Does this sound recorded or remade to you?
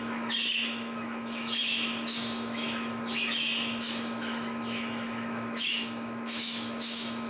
remade